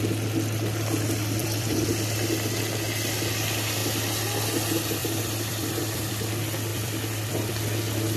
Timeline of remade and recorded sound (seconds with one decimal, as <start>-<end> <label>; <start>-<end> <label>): 0.0-1.4 recorded; 1.4-1.9 remade; 1.9-5.0 recorded; 5.0-6.1 remade; 6.1-6.7 recorded; 6.7-7.5 remade; 7.5-8.2 recorded